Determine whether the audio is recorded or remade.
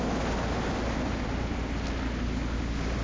recorded